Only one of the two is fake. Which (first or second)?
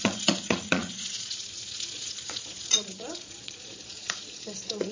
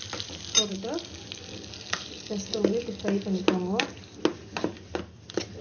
first